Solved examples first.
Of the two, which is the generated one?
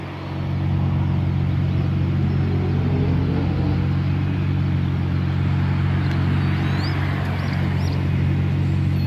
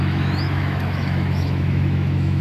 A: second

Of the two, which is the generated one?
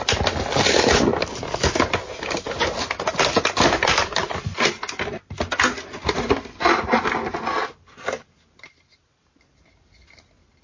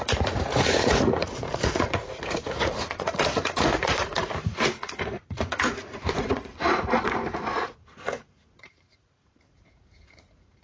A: second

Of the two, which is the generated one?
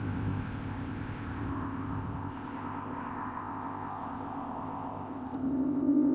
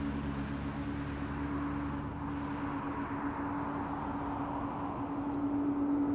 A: first